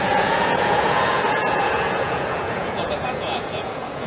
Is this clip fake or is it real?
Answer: fake